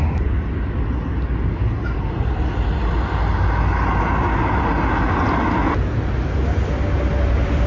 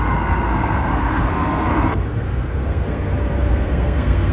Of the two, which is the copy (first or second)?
second